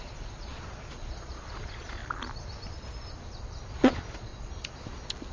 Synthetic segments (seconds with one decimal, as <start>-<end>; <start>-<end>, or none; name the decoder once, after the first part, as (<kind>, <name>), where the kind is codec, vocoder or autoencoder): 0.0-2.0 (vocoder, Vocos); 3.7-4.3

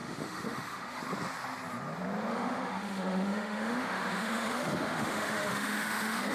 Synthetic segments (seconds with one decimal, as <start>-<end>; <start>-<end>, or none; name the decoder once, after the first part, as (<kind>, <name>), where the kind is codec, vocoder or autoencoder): 0.0-1.0 (autoencoder, DAC-VAE); 2.3-6.3

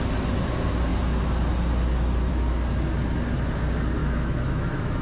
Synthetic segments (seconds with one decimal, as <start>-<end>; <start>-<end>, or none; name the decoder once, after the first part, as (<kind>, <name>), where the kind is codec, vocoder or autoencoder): 4.0-5.0 (autoencoder, DAC-VAE)